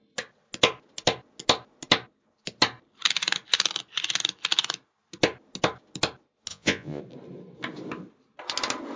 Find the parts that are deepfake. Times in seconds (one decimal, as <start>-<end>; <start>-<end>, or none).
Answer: 6.5-7.0